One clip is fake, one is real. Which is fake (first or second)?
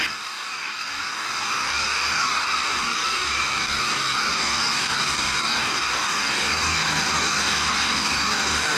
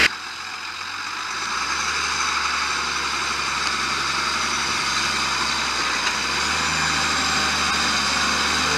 first